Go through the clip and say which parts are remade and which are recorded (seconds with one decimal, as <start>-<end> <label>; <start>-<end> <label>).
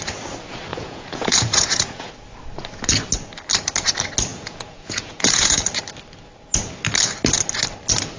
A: 0.0-0.7 recorded; 0.7-2.1 remade; 2.1-4.3 recorded; 4.3-5.6 remade; 5.6-8.2 recorded